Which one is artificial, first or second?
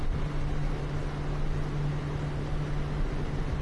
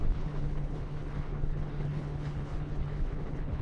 second